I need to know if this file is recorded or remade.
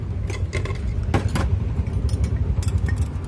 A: recorded